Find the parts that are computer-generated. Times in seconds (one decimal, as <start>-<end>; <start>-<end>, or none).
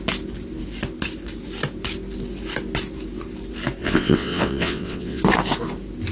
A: 3.8-5.2